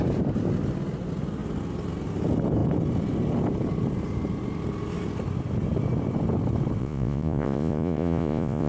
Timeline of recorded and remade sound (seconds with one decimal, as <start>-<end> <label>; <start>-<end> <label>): 0.0-6.8 recorded; 6.8-8.7 remade